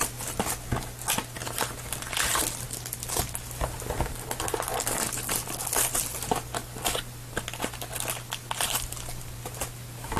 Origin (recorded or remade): recorded